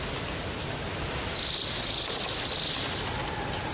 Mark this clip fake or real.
real